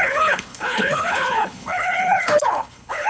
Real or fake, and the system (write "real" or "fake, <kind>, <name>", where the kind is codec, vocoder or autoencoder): fake, codec, HILCodec